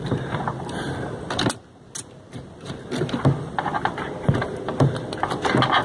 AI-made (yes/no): no